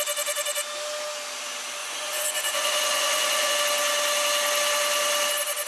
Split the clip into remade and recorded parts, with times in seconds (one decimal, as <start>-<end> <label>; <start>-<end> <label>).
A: 0.0-1.8 recorded; 1.8-3.5 remade; 3.5-5.7 recorded